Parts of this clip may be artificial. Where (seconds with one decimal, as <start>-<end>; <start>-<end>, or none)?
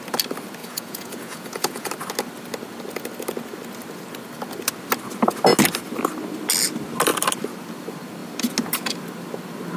0.6-1.9